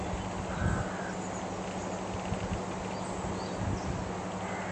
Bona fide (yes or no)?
yes